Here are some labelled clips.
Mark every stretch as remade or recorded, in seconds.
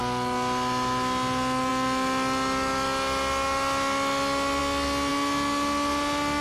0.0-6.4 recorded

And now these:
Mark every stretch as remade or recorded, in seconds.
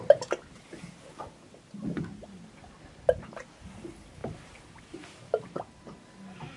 0.0-6.6 recorded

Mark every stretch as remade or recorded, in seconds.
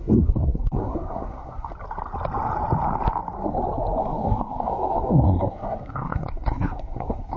0.0-1.7 remade; 1.7-4.0 recorded; 4.0-7.4 remade